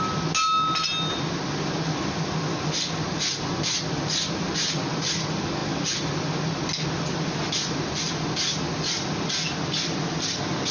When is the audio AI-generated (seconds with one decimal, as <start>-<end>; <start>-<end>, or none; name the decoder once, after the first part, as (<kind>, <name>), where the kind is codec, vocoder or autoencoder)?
none